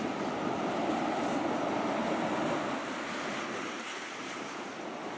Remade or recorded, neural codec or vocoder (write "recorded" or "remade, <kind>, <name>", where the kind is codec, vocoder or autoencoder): recorded